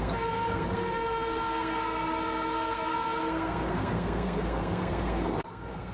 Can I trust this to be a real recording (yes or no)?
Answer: no